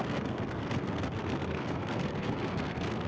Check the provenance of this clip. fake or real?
fake